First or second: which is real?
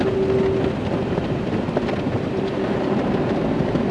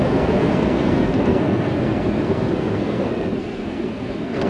first